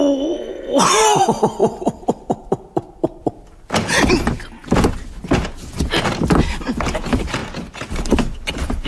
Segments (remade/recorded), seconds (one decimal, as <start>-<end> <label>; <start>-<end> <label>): 0.0-1.6 recorded; 1.6-4.1 remade; 4.1-7.4 recorded; 7.4-8.5 remade; 8.5-8.9 recorded